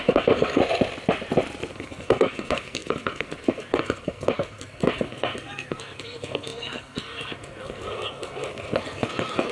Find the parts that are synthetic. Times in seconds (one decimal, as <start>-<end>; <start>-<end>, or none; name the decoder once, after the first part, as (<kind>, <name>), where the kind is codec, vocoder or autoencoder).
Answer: 0.0-0.6 (codec, SNAC); 1.7-9.5